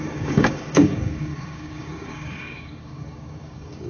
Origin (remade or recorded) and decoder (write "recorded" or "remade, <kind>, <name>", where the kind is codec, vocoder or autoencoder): remade, codec, DAC